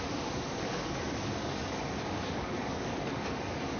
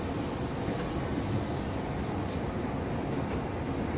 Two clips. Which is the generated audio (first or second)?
first